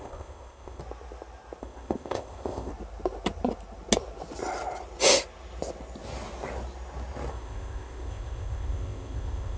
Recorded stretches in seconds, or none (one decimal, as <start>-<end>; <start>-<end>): 0.8-1.6; 2.7-7.3